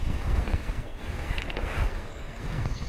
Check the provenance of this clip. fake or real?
fake